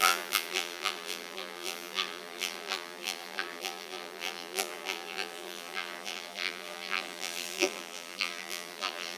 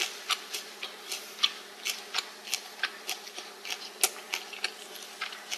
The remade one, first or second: first